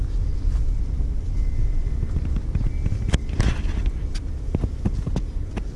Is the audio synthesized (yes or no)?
no